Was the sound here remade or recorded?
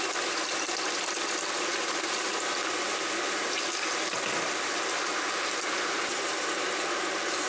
recorded